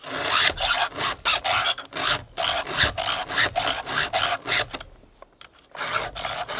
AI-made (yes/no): no